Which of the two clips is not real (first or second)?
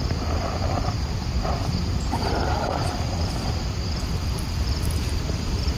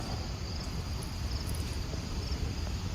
first